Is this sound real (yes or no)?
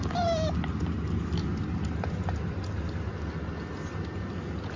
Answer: yes